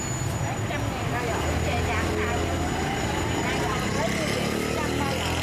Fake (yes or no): no